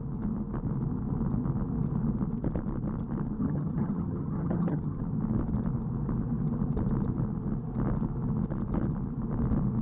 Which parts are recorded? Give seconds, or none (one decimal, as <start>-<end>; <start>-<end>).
0.0-3.4; 5.0-9.8